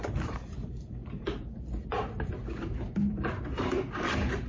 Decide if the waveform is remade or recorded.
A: remade